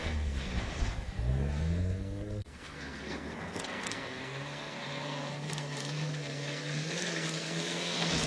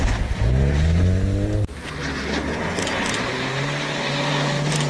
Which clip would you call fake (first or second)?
first